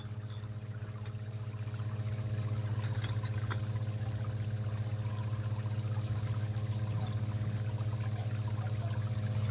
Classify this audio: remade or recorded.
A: recorded